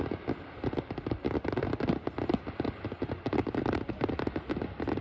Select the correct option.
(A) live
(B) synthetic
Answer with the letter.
A